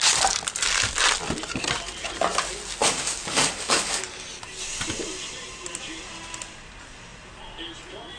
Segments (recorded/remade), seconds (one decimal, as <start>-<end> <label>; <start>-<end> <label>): 0.0-2.8 recorded; 2.8-4.0 remade; 4.0-8.2 recorded